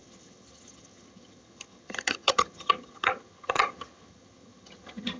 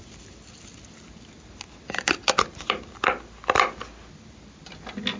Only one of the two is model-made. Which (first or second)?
first